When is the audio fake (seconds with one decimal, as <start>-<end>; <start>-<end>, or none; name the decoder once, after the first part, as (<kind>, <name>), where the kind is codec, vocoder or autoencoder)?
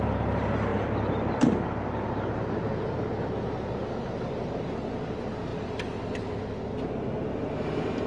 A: 0.7-2.8 (vocoder, BigVGAN v2); 5.5-6.4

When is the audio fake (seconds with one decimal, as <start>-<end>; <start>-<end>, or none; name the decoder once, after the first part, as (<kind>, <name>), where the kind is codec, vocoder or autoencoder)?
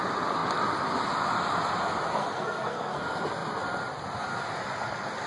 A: 2.2-3.0 (codec, SNAC)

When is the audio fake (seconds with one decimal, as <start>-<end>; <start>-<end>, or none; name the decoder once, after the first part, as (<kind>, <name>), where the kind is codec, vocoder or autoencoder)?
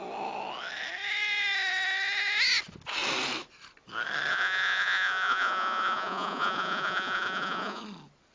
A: 4.3-7.8 (vocoder, Vocos)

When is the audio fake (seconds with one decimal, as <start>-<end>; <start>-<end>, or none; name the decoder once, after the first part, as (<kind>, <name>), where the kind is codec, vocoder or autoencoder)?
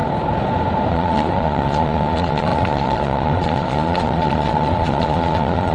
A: 0.9-5.7 (vocoder, Vocos)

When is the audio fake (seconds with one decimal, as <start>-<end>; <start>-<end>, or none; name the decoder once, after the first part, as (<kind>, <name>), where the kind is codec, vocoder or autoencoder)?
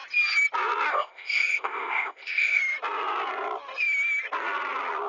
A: 0.9-2.6 (codec, ZipCodec)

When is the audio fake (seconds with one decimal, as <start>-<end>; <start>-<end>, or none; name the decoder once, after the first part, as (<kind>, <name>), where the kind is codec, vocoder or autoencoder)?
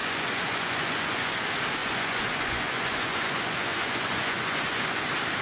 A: 0.0-1.3 (vocoder, Vocos); 1.8-5.0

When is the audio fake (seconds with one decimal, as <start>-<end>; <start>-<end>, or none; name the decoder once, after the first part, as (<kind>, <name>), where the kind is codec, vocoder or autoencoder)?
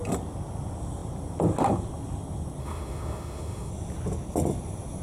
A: 2.6-3.7 (autoencoder, DAC-VAE)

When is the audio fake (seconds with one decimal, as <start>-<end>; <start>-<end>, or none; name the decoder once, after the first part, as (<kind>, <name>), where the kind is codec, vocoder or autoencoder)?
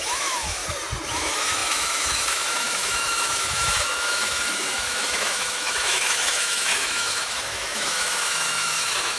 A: 0.0-0.6 (autoencoder, DAC-VAE); 1.1-9.2